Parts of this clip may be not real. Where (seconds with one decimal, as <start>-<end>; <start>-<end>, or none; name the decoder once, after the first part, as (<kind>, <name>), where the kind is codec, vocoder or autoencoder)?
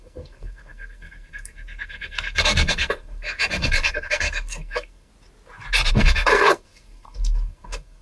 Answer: 0.0-5.1 (codec, SNAC); 5.9-8.0